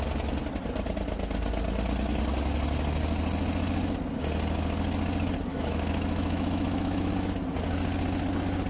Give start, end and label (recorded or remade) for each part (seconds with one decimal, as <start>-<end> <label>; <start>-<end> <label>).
0.0-5.5 recorded; 5.5-7.1 remade; 7.1-8.7 recorded